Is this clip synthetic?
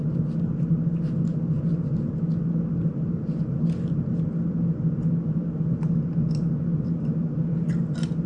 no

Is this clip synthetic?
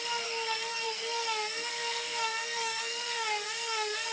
yes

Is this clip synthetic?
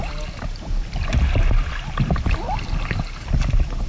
no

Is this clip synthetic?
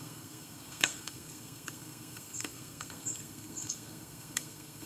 yes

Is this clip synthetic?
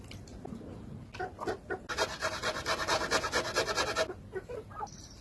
no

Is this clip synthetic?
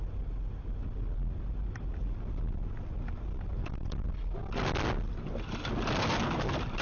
no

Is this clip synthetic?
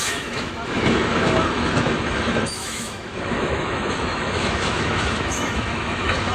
yes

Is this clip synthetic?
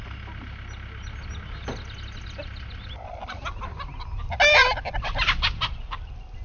no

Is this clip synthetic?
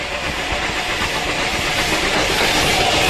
no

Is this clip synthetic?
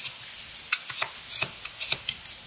no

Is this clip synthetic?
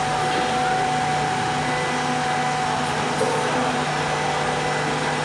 no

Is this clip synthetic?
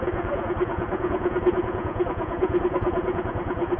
yes